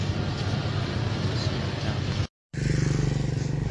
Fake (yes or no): no